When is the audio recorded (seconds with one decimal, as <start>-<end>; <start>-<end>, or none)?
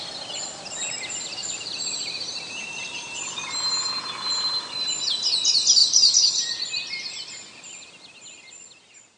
0.0-1.4; 3.9-5.8; 6.6-9.2